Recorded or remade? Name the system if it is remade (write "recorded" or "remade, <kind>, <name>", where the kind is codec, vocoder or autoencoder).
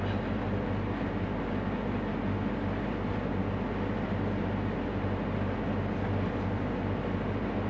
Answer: recorded